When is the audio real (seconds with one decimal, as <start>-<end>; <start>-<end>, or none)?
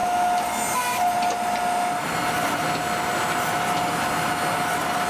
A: 0.0-5.1